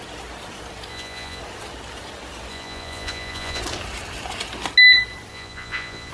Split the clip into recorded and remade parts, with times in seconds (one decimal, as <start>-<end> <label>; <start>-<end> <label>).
0.0-0.9 recorded; 0.9-1.4 remade; 1.4-2.5 recorded; 2.5-3.6 remade; 3.6-5.3 recorded; 5.3-6.1 remade